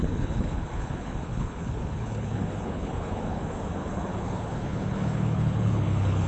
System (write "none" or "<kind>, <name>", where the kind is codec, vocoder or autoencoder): codec, HILCodec